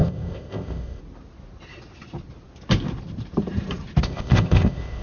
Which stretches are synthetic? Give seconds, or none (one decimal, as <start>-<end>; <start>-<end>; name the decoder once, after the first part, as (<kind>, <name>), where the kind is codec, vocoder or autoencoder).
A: 0.0-1.0 (codec, ZipCodec); 4.0-5.0